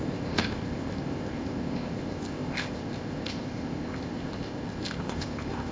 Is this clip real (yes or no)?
no